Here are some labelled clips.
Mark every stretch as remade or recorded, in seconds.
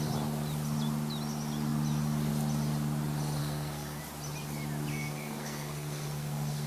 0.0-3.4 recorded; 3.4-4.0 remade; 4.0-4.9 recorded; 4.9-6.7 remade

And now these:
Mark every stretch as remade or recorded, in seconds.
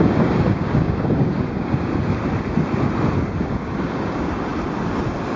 0.0-1.9 remade; 1.9-3.4 recorded; 3.4-4.5 remade; 4.5-5.4 recorded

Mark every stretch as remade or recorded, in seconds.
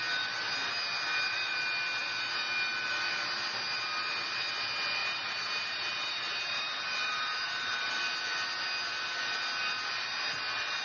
0.0-5.0 recorded; 5.0-7.9 remade; 7.9-10.8 recorded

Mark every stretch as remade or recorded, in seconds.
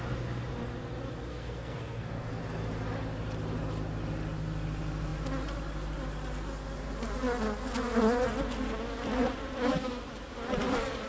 0.0-1.3 recorded; 1.3-2.4 remade; 2.4-11.1 recorded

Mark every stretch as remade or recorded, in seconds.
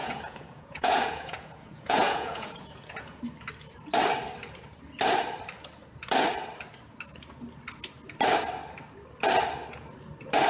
0.0-3.2 remade; 3.2-10.5 recorded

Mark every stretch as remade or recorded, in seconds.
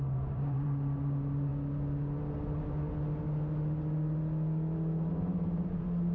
0.0-1.5 remade; 1.5-5.2 recorded; 5.2-6.1 remade